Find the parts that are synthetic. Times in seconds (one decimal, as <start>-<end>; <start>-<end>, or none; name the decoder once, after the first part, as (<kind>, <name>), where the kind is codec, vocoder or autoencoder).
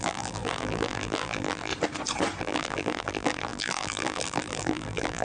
0.0-1.7 (vocoder, BigVGAN v2); 2.4-5.2